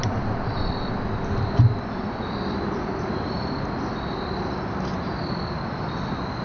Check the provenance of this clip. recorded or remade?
recorded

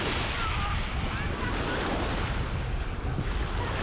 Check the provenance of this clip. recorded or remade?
recorded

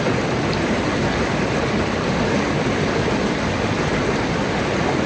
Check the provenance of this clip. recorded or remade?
recorded